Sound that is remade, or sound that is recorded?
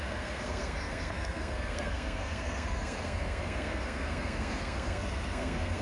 remade